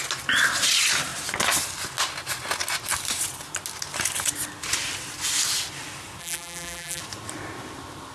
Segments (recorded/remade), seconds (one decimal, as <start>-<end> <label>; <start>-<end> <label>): 0.0-6.2 recorded; 6.2-7.0 remade; 7.0-8.1 recorded